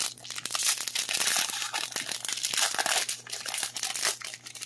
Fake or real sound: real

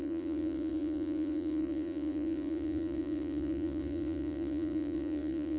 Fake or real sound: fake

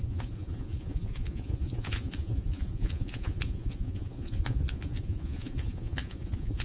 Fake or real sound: fake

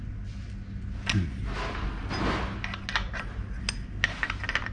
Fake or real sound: real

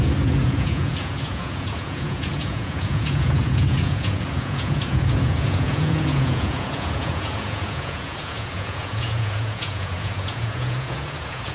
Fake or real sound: fake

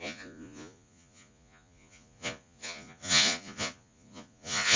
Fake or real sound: fake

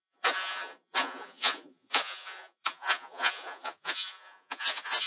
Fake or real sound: fake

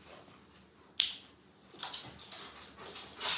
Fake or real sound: real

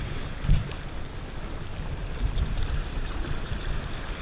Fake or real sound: real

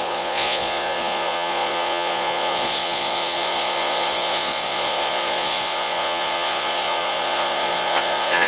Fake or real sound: fake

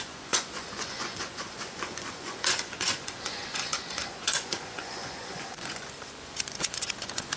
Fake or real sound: fake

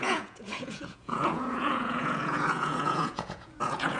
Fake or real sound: fake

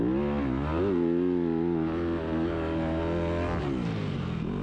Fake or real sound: real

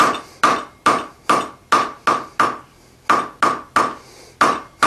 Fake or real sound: real